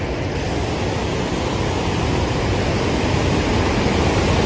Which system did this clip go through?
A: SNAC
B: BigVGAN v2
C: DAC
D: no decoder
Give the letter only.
D